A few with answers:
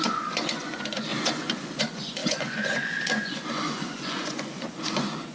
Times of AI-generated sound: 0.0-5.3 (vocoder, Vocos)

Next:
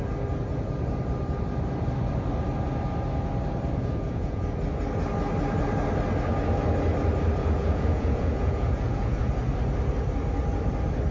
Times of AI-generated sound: 3.8-4.6 (vocoder, Vocos); 7.4-9.2

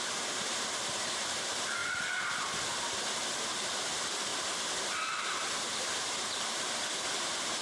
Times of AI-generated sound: 0.0-1.8 (vocoder, BigVGAN v2); 3.8-4.3; 4.8-7.6